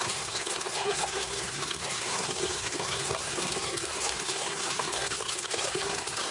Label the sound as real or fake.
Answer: fake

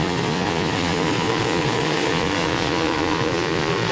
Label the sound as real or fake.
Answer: fake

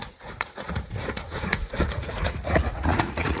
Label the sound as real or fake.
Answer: fake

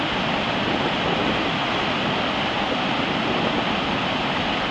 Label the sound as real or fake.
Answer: real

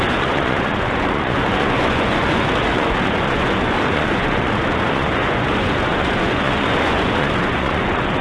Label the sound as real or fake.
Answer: fake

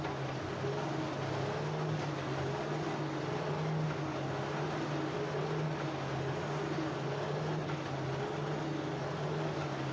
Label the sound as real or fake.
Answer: real